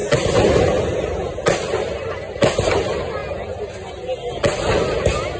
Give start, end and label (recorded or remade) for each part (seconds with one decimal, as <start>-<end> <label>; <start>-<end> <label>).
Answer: 0.0-5.4 recorded